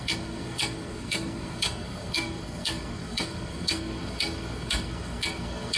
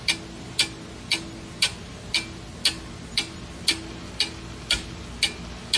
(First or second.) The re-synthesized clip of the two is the first